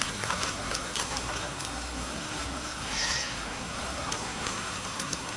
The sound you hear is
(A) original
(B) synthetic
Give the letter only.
B